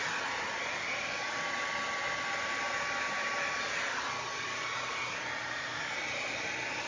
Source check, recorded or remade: recorded